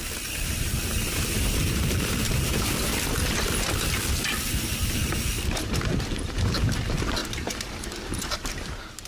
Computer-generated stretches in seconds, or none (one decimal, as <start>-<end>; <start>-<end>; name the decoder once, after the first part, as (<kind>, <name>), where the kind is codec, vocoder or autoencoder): 0.0-2.9 (vocoder, BigVGAN v2); 4.5-9.1